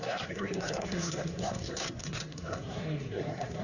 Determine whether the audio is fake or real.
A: fake